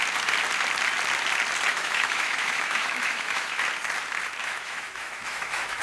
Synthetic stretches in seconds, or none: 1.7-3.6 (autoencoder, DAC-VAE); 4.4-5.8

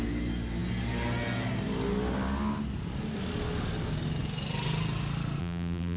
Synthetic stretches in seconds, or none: 5.4-6.0 (vocoder, BigVGAN v2)

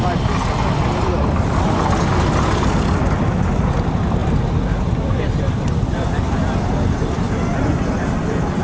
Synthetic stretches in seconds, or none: 7.7-8.2 (vocoder, BigVGAN v2)

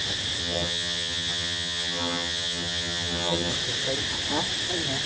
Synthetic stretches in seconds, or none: 0.4-3.5 (vocoder, HiFi-GAN)